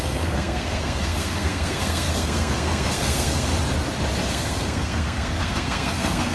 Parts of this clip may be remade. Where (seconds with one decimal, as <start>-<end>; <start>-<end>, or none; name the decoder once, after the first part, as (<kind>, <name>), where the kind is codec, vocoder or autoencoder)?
0.0-3.5 (codec, SNAC); 4.3-6.3